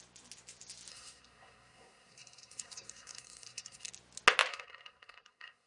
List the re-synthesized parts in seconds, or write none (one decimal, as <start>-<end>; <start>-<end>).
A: 0.9-3.9; 4.5-5.7